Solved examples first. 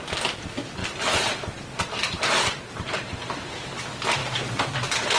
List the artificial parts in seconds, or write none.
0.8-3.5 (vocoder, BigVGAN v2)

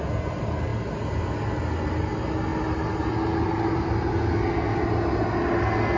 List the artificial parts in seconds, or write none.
none

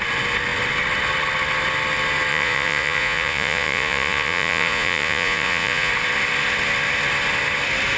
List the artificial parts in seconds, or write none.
2.3-5.9 (vocoder, Vocos)

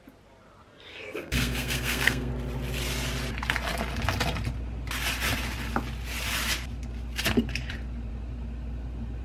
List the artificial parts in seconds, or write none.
0.9-2.3 (codec, SNAC)